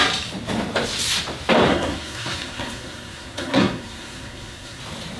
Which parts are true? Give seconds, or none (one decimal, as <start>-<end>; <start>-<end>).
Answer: 0.0-1.7; 4.8-5.2